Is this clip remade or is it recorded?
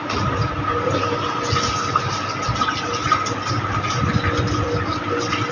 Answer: recorded